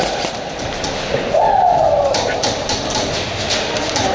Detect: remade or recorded recorded